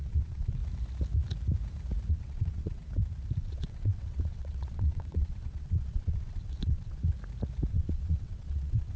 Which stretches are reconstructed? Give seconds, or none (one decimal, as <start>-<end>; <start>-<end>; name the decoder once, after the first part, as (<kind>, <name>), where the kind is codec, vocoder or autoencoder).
0.0-0.6 (vocoder, WaveNeXt); 2.1-2.8; 3.4-7.0; 7.7-9.0